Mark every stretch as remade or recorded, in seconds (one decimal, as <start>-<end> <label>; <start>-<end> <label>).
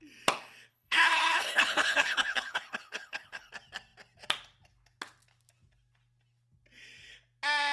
0.0-0.7 recorded; 0.7-3.5 remade; 3.5-7.7 recorded